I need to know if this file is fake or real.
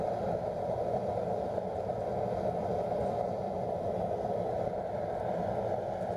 real